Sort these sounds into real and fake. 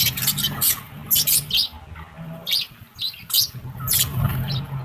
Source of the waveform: real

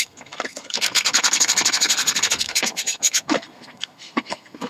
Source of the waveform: fake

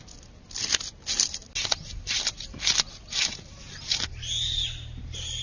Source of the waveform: real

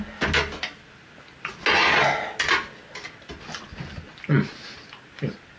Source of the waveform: real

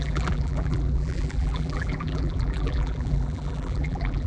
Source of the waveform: fake